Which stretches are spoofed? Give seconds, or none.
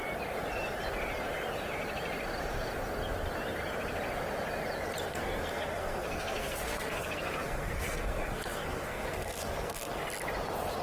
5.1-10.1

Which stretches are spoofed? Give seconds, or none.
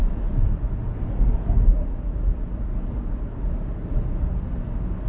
0.0-0.6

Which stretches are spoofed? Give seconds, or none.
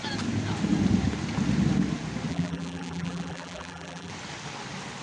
2.3-4.1